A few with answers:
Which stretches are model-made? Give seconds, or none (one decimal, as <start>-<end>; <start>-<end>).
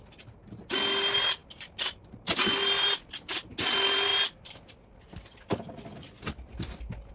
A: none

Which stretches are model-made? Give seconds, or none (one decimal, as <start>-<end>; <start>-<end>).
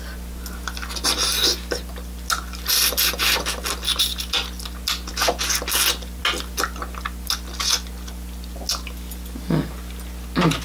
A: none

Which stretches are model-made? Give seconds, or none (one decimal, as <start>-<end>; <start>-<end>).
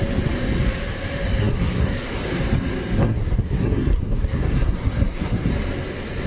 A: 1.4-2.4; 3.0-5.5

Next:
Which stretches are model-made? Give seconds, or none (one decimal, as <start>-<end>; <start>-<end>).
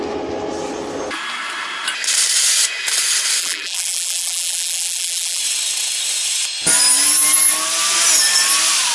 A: 3.4-5.4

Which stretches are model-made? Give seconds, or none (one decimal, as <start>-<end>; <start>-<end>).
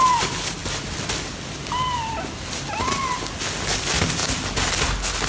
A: none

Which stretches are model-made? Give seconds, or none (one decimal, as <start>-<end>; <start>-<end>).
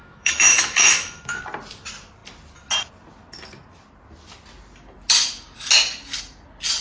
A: 0.0-1.4